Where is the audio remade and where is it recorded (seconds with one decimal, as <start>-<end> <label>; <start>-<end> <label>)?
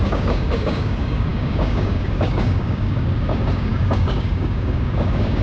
0.0-5.4 remade